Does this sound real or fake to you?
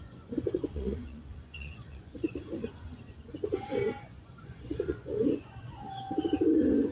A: fake